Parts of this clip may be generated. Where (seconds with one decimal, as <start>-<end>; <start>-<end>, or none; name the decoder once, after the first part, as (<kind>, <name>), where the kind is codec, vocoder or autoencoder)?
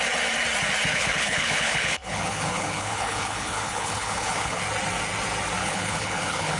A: 0.9-4.6 (codec, HILCodec); 5.6-6.6